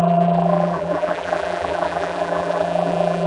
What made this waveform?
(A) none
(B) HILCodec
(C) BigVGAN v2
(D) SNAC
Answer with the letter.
C